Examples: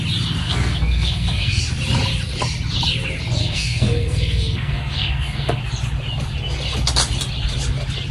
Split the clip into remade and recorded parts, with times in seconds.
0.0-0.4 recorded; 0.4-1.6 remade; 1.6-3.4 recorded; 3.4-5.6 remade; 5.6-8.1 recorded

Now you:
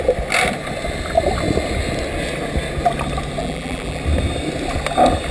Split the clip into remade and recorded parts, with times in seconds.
0.0-3.4 recorded; 3.4-4.0 remade; 4.0-5.3 recorded

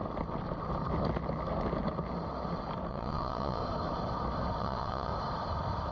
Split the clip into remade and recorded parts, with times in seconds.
0.0-2.9 recorded; 2.9-3.6 remade; 3.6-4.6 recorded; 4.6-5.1 remade; 5.1-5.9 recorded

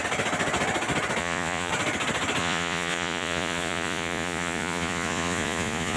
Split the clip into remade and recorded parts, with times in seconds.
0.0-1.2 recorded; 1.2-1.7 remade; 1.7-2.4 recorded; 2.4-6.0 remade

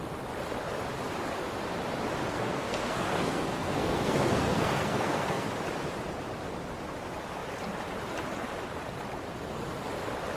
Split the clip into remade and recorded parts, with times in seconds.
0.0-2.3 recorded; 2.3-5.5 remade; 5.5-10.4 recorded

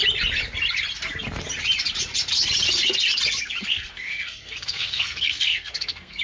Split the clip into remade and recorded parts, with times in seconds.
0.0-3.7 recorded; 3.7-6.2 remade

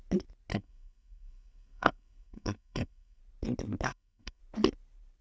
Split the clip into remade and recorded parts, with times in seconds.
0.0-0.5 recorded; 0.5-3.2 remade; 3.2-3.9 recorded; 3.9-4.4 remade; 4.4-5.2 recorded

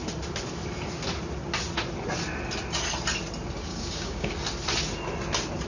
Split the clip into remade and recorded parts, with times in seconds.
0.0-3.7 recorded; 3.7-4.3 remade; 4.3-5.7 recorded